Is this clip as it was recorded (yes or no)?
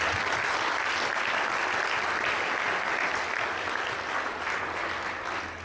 yes